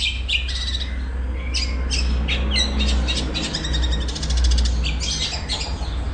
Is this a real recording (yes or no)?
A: yes